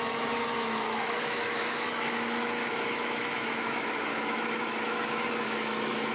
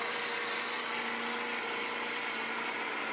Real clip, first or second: second